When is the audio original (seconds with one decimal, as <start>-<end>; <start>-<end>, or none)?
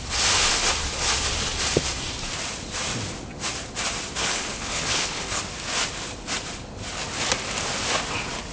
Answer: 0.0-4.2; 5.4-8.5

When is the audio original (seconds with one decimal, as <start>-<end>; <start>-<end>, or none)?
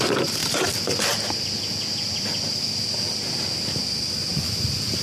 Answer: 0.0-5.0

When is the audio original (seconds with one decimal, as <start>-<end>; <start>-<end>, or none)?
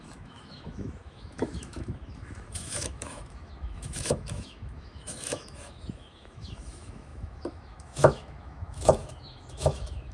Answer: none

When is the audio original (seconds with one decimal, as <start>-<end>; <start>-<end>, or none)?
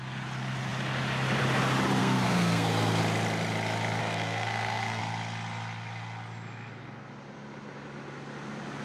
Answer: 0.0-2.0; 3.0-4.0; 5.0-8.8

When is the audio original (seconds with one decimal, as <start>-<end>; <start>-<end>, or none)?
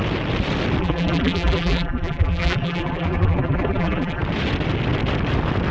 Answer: 0.0-0.8; 4.2-5.7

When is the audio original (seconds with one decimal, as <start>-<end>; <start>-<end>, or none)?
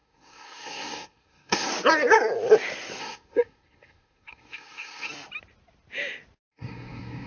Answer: 1.7-3.0; 5.1-6.5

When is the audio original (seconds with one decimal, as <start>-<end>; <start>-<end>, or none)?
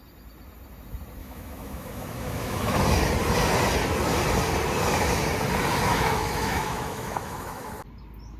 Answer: 0.0-1.2; 2.8-5.9; 7.7-8.4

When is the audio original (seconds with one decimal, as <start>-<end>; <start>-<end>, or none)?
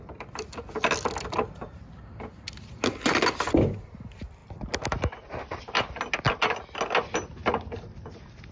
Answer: 0.0-8.5